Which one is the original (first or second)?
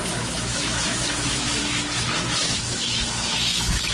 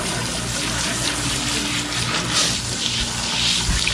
second